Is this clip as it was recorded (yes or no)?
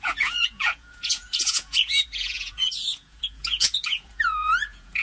no